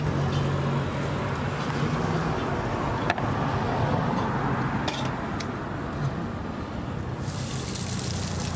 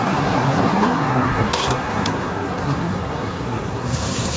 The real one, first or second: first